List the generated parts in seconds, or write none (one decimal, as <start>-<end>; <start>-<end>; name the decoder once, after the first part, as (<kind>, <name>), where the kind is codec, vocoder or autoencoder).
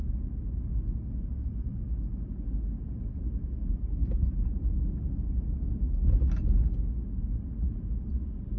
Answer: none